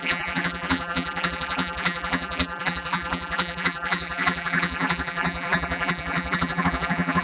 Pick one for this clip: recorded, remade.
remade